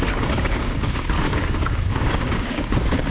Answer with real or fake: fake